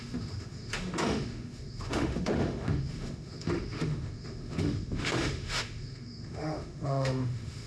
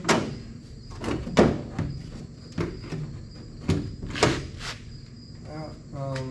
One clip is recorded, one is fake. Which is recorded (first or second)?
second